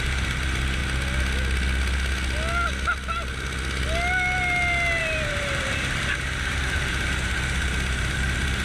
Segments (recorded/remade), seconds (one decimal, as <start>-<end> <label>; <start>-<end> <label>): 0.0-0.8 remade; 0.8-5.0 recorded; 5.0-8.6 remade